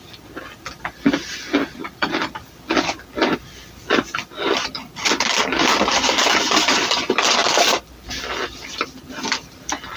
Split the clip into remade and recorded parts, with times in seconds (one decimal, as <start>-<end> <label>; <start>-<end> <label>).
0.0-1.8 recorded; 1.8-5.0 remade; 5.0-7.7 recorded; 7.7-10.0 remade